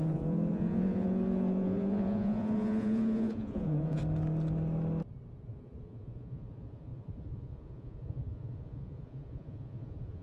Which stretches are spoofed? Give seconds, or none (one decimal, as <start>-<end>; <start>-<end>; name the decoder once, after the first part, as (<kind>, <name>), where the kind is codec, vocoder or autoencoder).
0.0-4.0 (vocoder, Vocos); 5.5-10.2